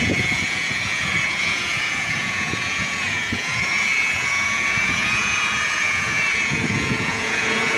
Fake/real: fake